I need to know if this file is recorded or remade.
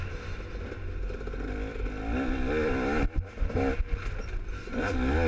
recorded